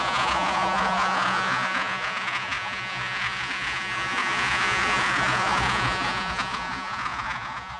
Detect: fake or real fake